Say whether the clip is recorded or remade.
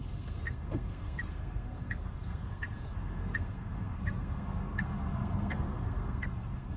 remade